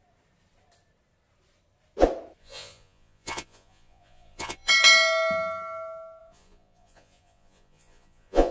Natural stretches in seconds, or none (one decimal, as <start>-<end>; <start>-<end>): 0.0-2.4; 4.7-6.2